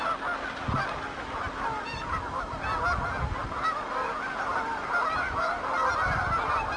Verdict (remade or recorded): recorded